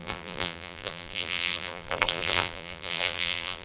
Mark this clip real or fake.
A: fake